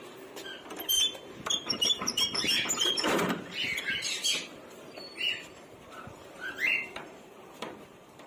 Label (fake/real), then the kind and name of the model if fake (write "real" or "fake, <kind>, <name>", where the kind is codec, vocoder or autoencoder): fake, vocoder, BigVGAN v2